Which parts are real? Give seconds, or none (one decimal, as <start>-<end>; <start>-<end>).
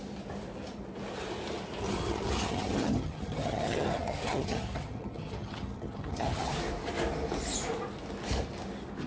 0.0-1.8; 6.5-9.1